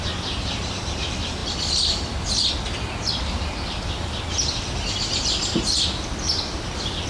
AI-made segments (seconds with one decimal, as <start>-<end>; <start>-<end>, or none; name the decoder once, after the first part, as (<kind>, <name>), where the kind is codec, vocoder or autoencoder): none